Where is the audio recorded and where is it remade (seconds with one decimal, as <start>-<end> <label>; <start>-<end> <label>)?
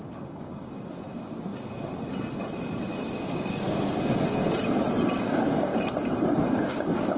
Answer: 0.0-1.5 remade; 1.5-3.1 recorded; 3.1-4.4 remade; 4.4-5.2 recorded; 5.2-5.7 remade; 5.7-6.6 recorded; 6.6-7.2 remade